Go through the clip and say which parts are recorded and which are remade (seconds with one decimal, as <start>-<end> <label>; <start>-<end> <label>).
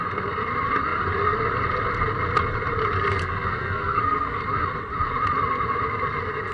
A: 0.0-3.2 recorded; 3.2-4.4 remade; 4.4-6.5 recorded